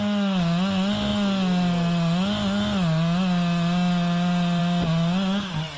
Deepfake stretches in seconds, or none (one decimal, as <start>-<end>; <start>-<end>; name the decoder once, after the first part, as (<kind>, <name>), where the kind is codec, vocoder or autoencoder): none